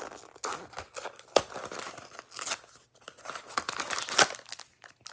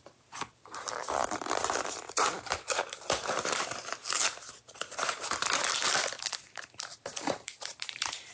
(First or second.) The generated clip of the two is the second